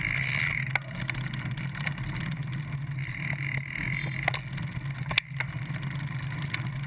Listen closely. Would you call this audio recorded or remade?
recorded